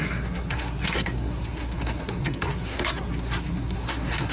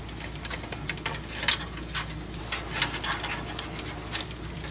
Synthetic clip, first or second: first